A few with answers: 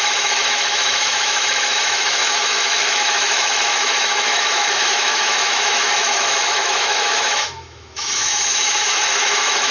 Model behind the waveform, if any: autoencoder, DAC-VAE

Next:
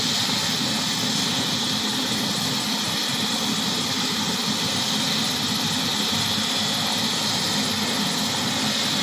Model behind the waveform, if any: none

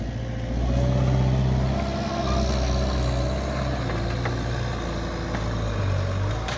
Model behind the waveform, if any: none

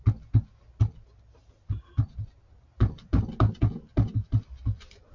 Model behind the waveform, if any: none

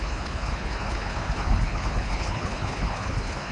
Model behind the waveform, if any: codec, HILCodec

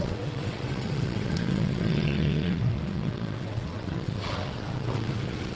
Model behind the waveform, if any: vocoder, WaveNeXt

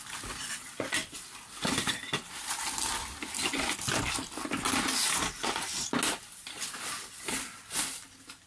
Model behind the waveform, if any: none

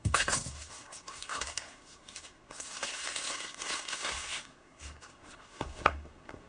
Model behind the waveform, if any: codec, SNAC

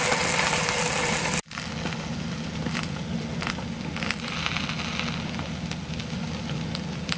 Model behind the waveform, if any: none